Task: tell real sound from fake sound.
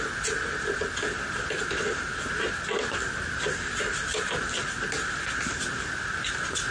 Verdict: real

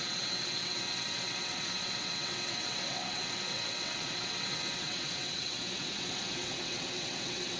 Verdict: fake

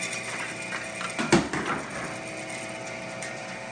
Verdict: real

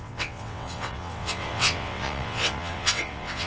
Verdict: fake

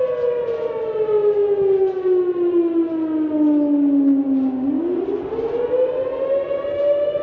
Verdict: real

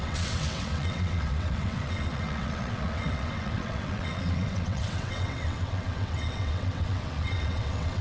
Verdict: fake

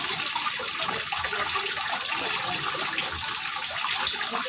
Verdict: real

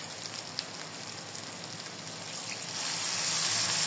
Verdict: real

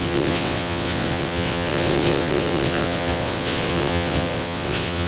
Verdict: fake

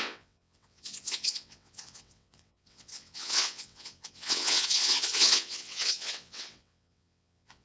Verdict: fake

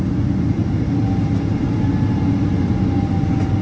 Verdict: real